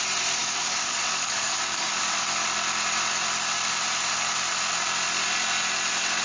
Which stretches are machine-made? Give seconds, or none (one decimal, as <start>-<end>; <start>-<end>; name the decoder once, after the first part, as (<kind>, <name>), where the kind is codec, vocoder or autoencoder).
0.4-2.0 (codec, DAC)